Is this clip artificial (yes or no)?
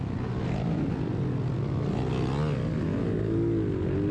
no